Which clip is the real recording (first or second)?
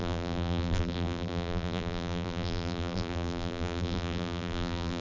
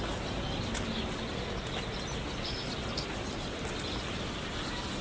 second